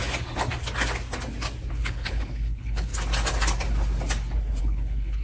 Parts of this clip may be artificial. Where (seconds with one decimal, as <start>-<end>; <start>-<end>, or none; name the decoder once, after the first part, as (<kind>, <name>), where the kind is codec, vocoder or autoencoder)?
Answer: 1.7-2.9 (codec, HILCodec); 4.6-5.2